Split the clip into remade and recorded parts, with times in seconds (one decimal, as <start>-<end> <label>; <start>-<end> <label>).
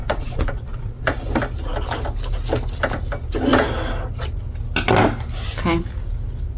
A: 0.0-1.1 remade; 1.1-6.6 recorded